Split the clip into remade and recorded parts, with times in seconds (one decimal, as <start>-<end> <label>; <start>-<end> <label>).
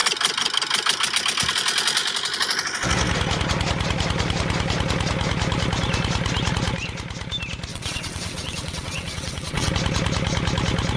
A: 0.0-7.7 recorded; 7.7-9.7 remade; 9.7-11.0 recorded